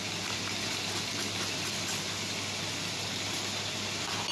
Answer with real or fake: real